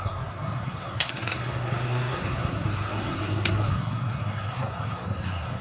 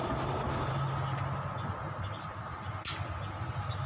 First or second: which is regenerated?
first